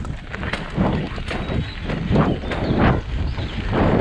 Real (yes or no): yes